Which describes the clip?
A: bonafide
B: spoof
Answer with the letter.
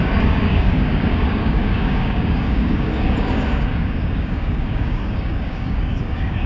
B